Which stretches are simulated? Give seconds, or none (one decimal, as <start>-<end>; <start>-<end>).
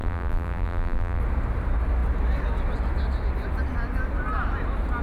0.0-1.2